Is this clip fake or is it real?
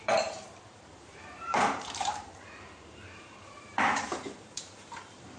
fake